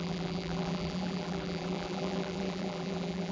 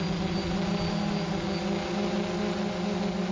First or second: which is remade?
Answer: first